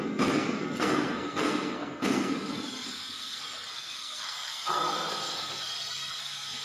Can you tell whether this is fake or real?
fake